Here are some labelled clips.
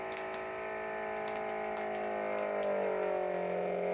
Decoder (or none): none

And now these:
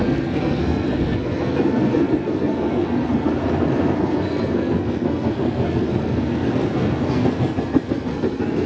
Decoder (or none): codec, SNAC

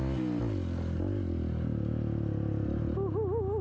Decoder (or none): none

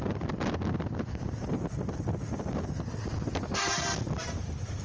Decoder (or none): none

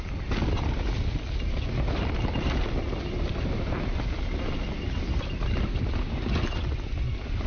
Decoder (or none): none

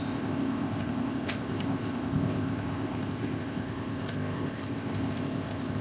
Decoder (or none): codec, ZipCodec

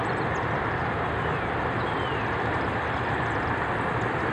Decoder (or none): vocoder, BigVGAN v2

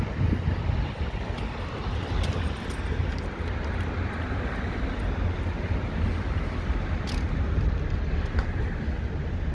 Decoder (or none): none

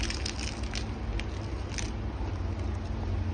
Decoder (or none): none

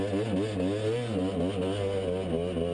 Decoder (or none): none